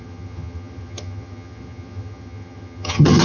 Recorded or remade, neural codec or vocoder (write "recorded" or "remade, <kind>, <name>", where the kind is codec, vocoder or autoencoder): remade, vocoder, HiFi-GAN